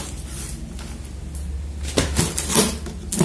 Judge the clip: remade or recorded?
recorded